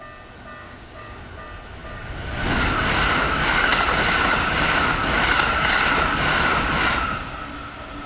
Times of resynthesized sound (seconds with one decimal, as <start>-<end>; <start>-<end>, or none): 0.6-1.2